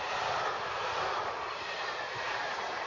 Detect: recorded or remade recorded